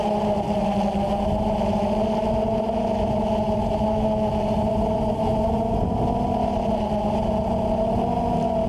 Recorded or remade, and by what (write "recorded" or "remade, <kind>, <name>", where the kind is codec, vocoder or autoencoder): recorded